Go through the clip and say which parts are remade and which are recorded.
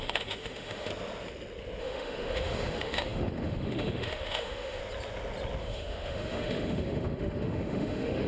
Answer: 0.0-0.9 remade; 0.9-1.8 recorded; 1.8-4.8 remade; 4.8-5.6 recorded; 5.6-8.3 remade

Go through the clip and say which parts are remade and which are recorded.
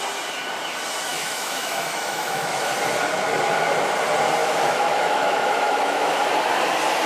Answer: 0.0-1.1 recorded; 1.1-2.7 remade; 2.7-4.4 recorded; 4.4-6.2 remade; 6.2-7.1 recorded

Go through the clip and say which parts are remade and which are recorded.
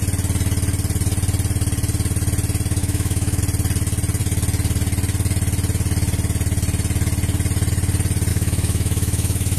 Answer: 0.0-2.8 recorded; 2.8-3.4 remade; 3.4-8.3 recorded; 8.3-9.6 remade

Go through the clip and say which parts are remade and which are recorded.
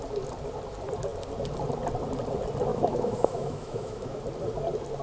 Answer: 0.0-2.7 recorded; 2.7-4.2 remade; 4.2-5.0 recorded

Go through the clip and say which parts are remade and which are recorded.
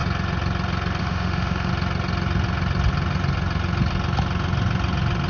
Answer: 0.0-1.0 recorded; 1.0-1.7 remade; 1.7-5.3 recorded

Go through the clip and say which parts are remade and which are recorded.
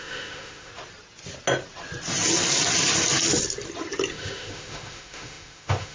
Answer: 0.0-0.7 remade; 0.7-4.1 recorded; 4.1-5.9 remade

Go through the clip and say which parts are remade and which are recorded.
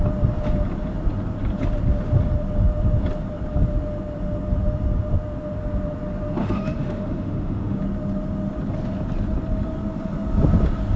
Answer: 0.0-6.4 recorded; 6.4-7.8 remade; 7.8-11.0 recorded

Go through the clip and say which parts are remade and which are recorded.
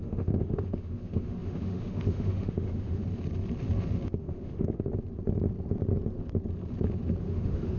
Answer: 0.0-3.0 remade; 3.0-4.2 recorded; 4.2-4.9 remade; 4.9-7.2 recorded; 7.2-7.8 remade